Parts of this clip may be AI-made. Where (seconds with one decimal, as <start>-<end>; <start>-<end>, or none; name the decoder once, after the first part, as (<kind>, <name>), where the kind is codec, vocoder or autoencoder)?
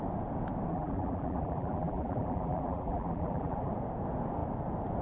0.7-3.7 (vocoder, BigVGAN v2)